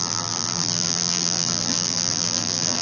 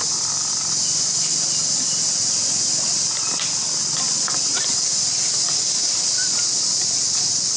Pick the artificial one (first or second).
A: first